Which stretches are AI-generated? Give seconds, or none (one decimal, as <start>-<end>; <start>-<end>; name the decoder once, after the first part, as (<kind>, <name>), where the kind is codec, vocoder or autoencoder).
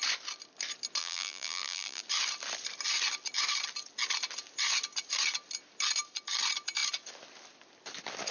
1.0-2.0 (vocoder, BigVGAN v2)